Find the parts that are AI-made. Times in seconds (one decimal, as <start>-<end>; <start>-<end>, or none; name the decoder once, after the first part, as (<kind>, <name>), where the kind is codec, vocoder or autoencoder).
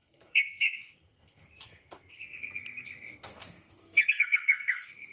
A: 0.0-5.1 (codec, SNAC)